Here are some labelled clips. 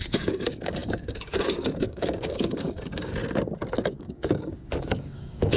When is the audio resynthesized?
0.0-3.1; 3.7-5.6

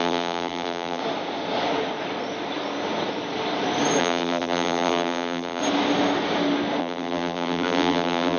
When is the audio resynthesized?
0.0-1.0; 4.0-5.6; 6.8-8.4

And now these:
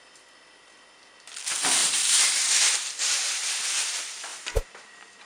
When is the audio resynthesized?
1.8-3.5; 4.3-5.3